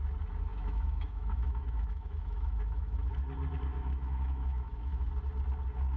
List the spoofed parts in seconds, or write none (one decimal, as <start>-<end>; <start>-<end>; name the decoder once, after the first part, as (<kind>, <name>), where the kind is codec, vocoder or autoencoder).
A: 0.5-3.1 (autoencoder, DAC-VAE); 3.7-5.1